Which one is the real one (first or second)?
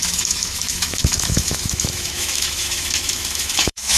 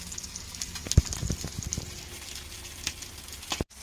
second